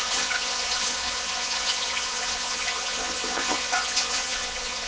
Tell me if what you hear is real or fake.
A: fake